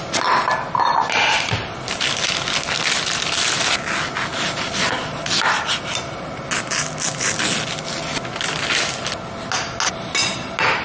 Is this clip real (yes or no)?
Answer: yes